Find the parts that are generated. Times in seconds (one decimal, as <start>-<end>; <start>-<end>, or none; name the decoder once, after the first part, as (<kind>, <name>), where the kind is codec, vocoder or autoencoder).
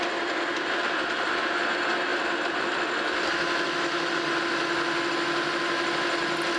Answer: none